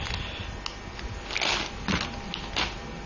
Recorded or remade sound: recorded